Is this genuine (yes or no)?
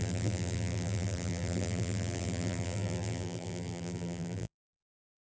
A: no